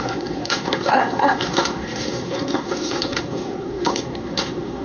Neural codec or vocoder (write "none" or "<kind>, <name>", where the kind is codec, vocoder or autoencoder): codec, SNAC